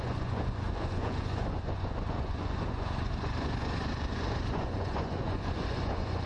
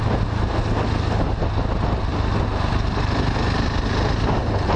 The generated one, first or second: first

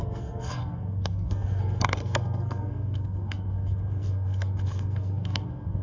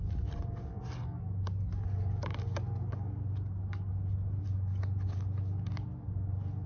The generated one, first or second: first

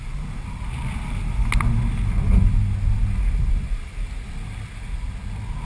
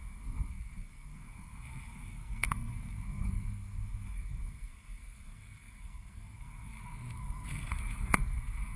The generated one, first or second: second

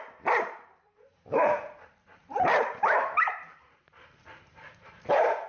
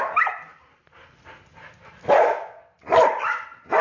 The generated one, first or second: first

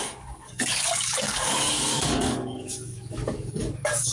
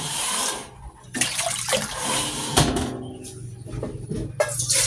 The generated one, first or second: first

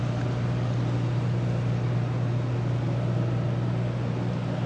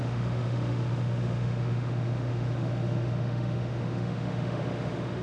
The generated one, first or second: second